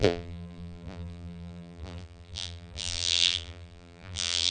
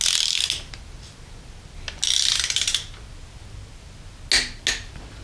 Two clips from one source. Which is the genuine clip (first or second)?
second